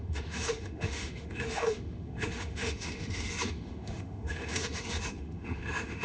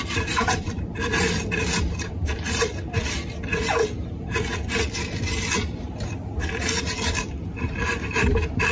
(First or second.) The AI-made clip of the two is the first